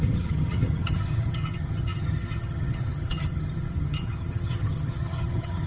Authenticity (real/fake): fake